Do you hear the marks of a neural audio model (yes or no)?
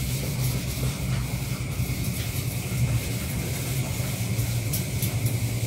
yes